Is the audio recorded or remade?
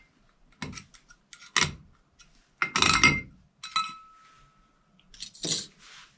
recorded